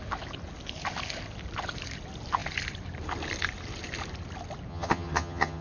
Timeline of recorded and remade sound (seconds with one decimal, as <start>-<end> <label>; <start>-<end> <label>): 0.0-4.7 recorded; 4.7-5.6 remade